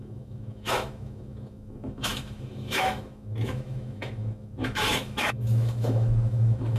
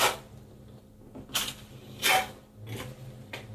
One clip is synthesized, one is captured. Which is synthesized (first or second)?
first